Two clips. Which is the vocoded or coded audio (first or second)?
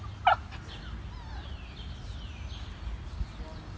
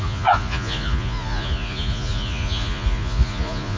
second